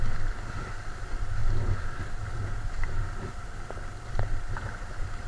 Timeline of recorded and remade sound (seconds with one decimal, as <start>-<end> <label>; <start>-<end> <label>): 0.0-5.3 recorded

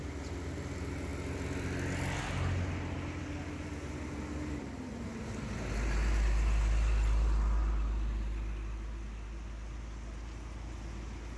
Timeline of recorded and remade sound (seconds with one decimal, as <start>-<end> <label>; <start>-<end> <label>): 0.0-11.4 recorded